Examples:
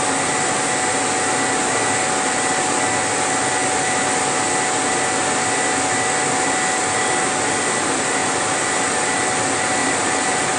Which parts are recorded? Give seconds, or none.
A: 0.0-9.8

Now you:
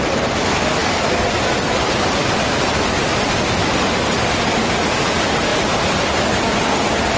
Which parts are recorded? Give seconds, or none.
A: 0.0-2.2; 3.9-5.5